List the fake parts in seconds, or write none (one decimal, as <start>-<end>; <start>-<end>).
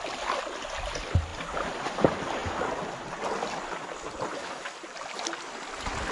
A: none